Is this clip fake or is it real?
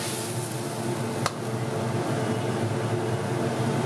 real